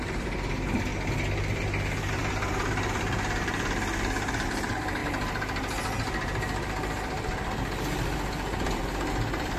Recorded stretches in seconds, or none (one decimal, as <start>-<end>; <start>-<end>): 0.9-2.1; 5.0-9.1